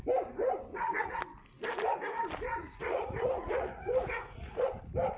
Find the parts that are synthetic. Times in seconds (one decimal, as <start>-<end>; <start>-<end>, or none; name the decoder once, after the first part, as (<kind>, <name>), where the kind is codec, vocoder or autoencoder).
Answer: 0.7-1.2 (vocoder, Vocos); 2.6-4.7

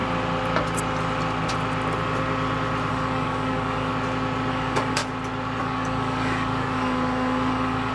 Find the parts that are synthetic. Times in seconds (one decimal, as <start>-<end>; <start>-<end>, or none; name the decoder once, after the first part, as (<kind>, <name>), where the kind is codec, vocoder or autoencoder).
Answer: 2.9-3.9 (codec, DAC); 4.5-5.0; 5.6-7.9

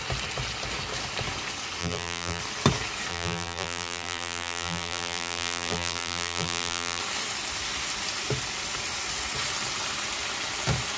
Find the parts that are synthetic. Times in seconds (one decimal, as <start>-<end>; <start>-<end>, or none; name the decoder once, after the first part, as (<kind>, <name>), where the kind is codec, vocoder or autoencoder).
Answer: 1.8-2.4 (vocoder, BigVGAN v2); 3.1-7.0

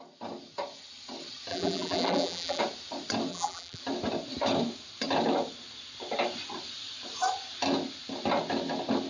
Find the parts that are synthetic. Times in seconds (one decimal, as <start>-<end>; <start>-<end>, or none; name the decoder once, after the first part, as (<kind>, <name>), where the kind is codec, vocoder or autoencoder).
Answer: 1.5-2.6 (vocoder, BigVGAN v2); 3.3-3.8